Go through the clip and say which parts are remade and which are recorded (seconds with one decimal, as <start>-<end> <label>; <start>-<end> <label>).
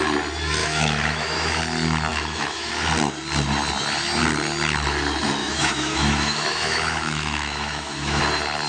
0.0-0.6 recorded; 0.6-1.6 remade; 1.6-2.1 recorded; 2.1-2.7 remade; 2.7-5.4 recorded; 5.4-8.2 remade; 8.2-8.7 recorded